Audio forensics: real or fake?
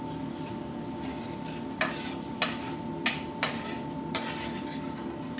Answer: real